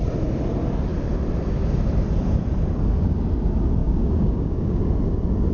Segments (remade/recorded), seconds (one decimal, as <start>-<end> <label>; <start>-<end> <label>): 0.0-3.8 recorded; 3.8-4.8 remade; 4.8-5.5 recorded